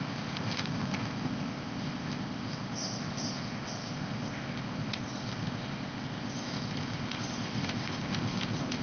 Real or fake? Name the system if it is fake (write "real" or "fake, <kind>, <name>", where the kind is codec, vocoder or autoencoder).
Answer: fake, codec, ZipCodec